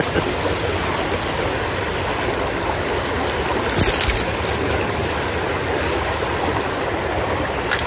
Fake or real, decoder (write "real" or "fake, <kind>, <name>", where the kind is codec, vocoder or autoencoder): real